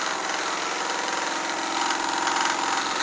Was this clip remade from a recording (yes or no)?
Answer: no